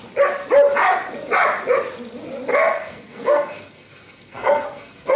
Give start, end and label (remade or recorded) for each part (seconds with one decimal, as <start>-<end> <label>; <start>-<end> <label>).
0.0-2.5 recorded; 2.5-5.2 remade